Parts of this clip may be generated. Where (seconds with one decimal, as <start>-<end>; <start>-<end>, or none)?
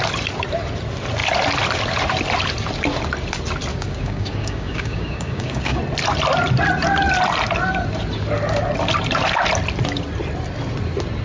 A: 3.7-5.8